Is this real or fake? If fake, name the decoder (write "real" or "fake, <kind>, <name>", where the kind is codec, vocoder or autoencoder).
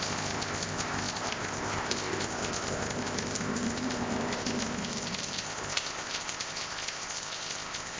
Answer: fake, codec, ZipCodec